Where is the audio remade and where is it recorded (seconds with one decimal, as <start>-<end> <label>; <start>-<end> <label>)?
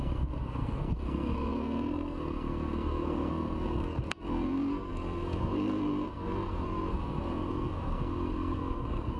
0.0-9.2 remade